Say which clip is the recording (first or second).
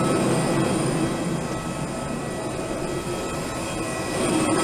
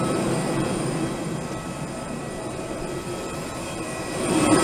first